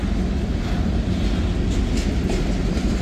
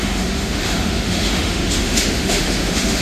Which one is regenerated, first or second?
second